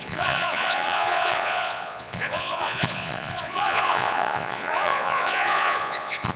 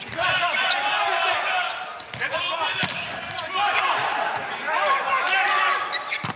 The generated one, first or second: first